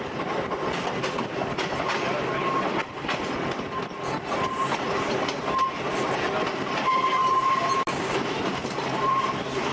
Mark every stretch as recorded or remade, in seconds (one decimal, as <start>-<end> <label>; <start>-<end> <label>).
0.0-7.2 recorded; 7.2-7.7 remade; 7.7-8.6 recorded; 8.6-9.7 remade